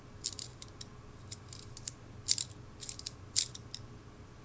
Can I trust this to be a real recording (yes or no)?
yes